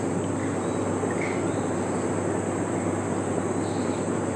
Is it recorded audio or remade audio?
recorded